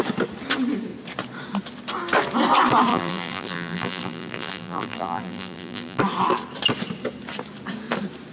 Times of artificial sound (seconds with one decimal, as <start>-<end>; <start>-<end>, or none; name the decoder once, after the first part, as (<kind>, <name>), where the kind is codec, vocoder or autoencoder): 2.9-6.0 (vocoder, BigVGAN v2)